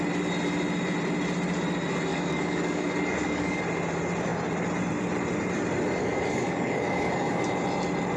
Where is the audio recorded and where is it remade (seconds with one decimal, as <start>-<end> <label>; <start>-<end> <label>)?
0.0-2.1 recorded; 2.1-3.6 remade; 3.6-6.0 recorded; 6.0-7.4 remade; 7.4-8.2 recorded